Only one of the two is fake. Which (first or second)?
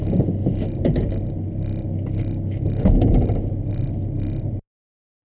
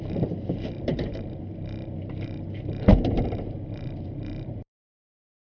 second